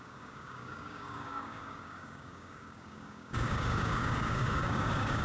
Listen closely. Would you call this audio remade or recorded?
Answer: remade